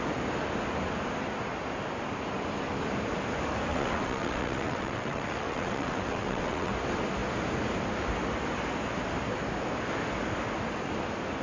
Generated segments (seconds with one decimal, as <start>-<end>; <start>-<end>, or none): 3.7-6.7